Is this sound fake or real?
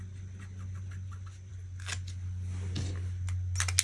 real